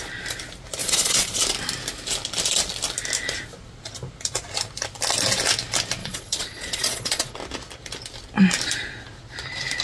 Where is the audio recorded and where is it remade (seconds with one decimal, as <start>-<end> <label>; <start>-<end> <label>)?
0.0-0.8 recorded; 0.8-1.4 remade; 1.4-6.0 recorded; 6.0-7.3 remade; 7.3-9.8 recorded